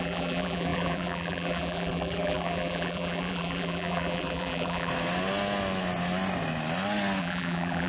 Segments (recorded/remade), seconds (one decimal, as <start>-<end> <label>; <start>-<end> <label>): 0.0-4.9 remade; 4.9-7.2 recorded; 7.2-7.9 remade